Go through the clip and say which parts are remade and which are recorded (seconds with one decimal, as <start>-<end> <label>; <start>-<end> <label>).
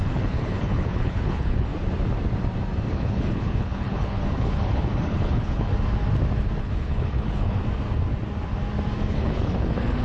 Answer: 0.0-1.7 remade; 1.7-2.9 recorded; 2.9-5.7 remade; 5.7-6.6 recorded; 6.6-7.6 remade; 7.6-9.1 recorded; 9.1-10.0 remade